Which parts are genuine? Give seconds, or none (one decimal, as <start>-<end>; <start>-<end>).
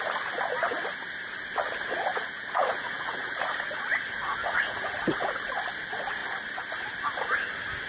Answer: 0.0-2.1; 5.6-7.9